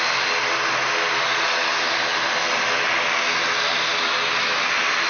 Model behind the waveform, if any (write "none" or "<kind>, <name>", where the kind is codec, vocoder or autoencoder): none